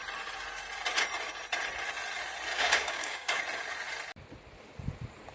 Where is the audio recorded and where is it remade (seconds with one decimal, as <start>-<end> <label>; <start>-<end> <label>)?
0.0-2.5 recorded; 2.5-3.4 remade; 3.4-5.3 recorded